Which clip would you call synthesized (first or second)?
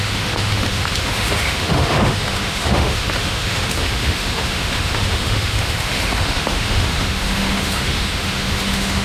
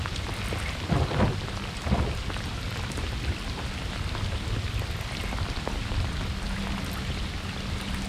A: first